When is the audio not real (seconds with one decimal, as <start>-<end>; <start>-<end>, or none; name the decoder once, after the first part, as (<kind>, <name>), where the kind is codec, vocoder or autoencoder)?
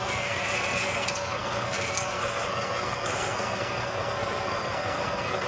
0.0-5.5 (codec, SNAC)